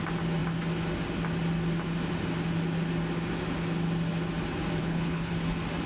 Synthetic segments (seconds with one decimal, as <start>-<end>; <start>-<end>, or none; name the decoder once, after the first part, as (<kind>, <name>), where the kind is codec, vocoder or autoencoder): 4.8-5.3 (codec, HILCodec)